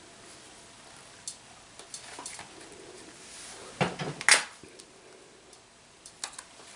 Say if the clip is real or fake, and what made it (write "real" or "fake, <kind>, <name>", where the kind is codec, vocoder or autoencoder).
real